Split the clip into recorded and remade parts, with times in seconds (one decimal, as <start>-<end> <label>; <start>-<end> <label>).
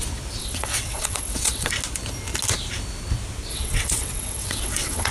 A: 0.0-0.4 recorded; 0.4-1.7 remade; 1.7-3.5 recorded; 3.5-5.1 remade